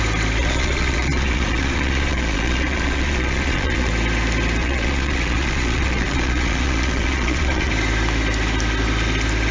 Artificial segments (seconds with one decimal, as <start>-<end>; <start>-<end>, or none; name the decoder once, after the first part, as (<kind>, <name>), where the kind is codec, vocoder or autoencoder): 0.4-3.9 (vocoder, Vocos); 4.6-7.7